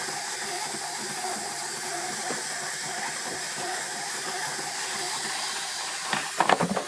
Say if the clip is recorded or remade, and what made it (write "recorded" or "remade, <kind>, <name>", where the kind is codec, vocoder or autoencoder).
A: remade, vocoder, BigVGAN v2